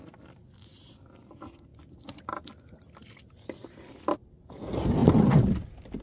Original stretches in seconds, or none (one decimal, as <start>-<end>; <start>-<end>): 0.0-6.0